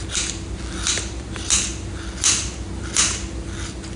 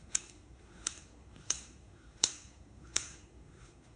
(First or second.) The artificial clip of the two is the second